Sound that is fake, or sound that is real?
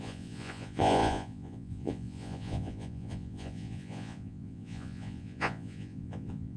fake